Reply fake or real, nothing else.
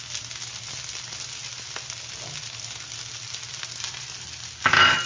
real